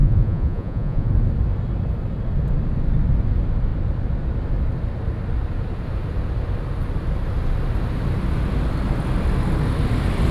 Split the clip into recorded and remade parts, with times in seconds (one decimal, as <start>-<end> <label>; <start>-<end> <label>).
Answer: 0.0-1.1 remade; 1.1-10.3 recorded